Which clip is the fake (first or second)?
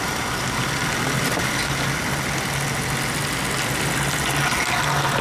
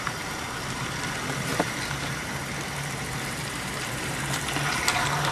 second